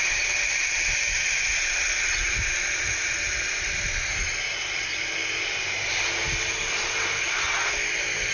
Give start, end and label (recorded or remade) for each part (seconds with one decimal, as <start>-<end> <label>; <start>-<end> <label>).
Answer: 0.0-8.3 recorded